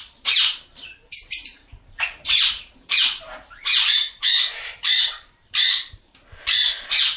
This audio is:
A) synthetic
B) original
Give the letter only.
A